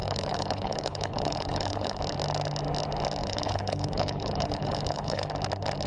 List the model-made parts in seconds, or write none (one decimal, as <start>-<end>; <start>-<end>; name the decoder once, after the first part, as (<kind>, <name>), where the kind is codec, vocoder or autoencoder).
0.0-2.0 (codec, HILCodec); 3.2-5.3